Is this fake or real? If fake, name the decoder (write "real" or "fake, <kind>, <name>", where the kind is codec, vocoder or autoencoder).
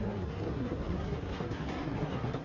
fake, codec, SNAC